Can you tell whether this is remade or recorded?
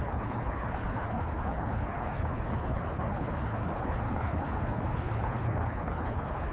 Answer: remade